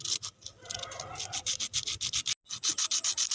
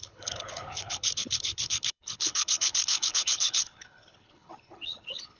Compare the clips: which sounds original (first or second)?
first